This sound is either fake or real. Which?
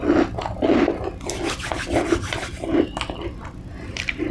real